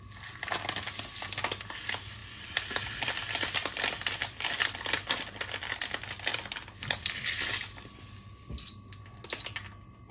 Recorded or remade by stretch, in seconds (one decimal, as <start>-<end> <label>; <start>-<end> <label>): 0.0-2.2 recorded; 2.2-5.8 remade; 5.8-6.3 recorded; 6.3-7.5 remade; 7.5-10.1 recorded